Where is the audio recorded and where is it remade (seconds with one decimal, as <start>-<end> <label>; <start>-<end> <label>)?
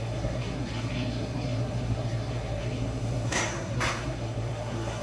0.0-5.0 remade